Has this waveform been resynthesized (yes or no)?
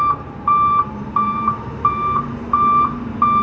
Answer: yes